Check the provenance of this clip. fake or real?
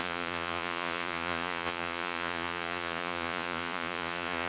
fake